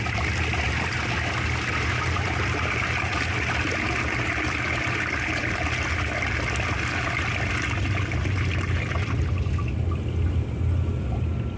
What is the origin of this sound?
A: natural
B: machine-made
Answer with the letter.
A